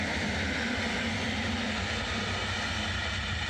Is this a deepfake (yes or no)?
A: yes